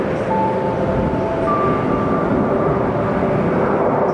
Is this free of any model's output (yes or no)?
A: yes